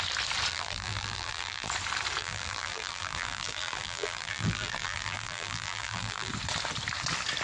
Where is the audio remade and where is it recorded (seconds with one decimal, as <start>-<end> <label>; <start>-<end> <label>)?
0.0-0.5 recorded; 0.5-1.7 remade; 1.7-2.2 recorded; 2.2-6.3 remade; 6.3-7.4 recorded